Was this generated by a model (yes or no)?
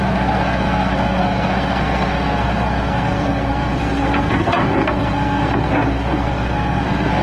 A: yes